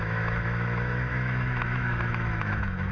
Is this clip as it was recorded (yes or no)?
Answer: no